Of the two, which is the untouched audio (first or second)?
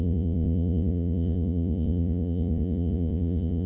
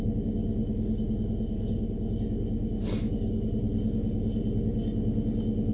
second